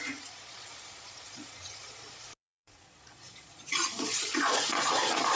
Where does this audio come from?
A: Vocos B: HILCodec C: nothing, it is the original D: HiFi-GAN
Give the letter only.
A